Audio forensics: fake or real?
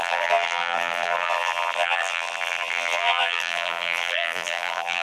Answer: fake